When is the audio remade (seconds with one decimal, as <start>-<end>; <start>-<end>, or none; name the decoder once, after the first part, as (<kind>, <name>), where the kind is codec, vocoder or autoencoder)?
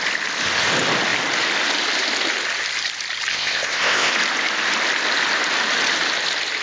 3.3-4.1 (codec, ZipCodec)